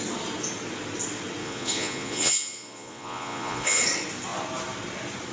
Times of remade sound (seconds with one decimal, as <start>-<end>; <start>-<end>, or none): 1.4-3.8